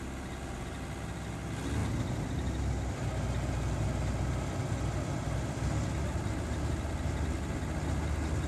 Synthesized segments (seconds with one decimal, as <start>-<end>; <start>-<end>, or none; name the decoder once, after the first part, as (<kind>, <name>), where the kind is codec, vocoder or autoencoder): none